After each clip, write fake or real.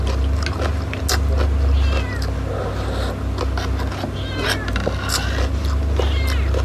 real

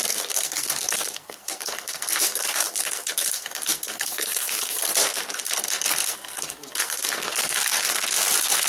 fake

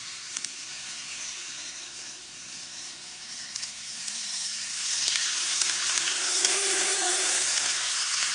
fake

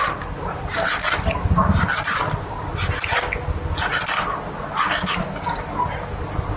real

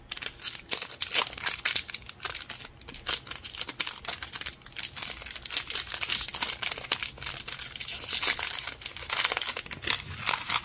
real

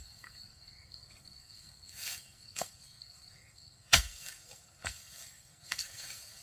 fake